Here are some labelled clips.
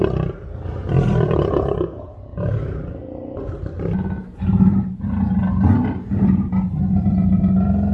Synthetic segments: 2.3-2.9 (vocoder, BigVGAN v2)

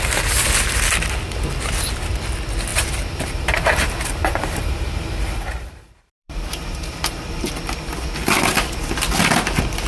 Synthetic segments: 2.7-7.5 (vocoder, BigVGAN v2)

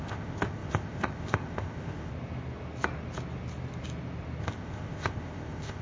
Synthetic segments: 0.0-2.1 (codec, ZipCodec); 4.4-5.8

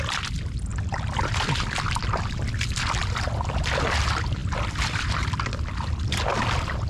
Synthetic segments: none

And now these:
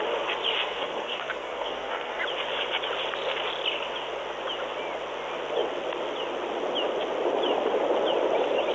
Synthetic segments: 0.6-2.2 (codec, SNAC)

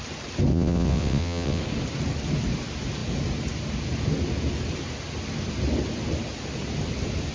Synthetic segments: 0.5-1.6 (vocoder, WaveNeXt)